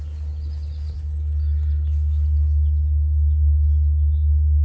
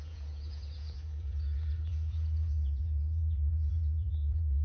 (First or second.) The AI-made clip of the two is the second